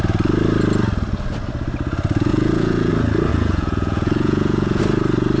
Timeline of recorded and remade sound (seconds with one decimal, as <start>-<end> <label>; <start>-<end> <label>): 0.0-2.3 recorded; 2.3-2.9 remade; 2.9-3.3 recorded; 3.3-4.8 remade; 4.8-5.4 recorded